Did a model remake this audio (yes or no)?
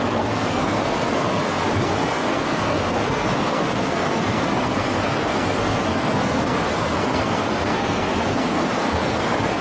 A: yes